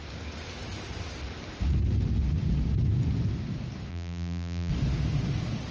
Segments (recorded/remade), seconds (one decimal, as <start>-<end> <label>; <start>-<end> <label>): 0.0-3.9 recorded; 3.9-4.7 remade; 4.7-5.7 recorded